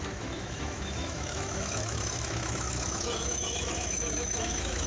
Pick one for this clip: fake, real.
fake